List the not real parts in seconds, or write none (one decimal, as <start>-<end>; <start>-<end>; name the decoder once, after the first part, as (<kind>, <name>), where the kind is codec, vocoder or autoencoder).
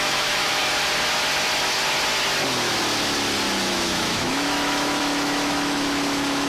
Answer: 0.0-0.6 (autoencoder, DAC-VAE); 3.7-6.5